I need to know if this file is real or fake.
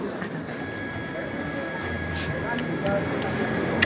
real